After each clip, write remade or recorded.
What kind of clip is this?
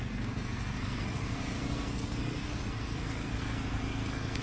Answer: remade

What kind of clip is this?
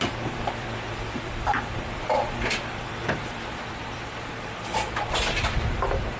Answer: remade